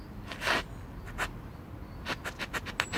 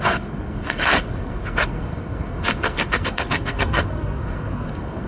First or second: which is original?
first